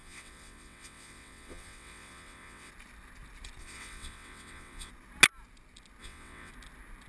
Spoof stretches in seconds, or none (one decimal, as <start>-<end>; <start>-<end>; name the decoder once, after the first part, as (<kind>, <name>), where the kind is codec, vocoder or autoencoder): 0.0-2.7 (vocoder, WaveNeXt); 3.6-4.9; 6.0-6.5